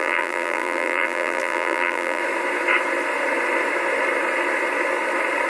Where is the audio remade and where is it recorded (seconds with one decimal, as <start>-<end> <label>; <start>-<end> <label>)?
0.0-2.2 remade; 2.2-5.5 recorded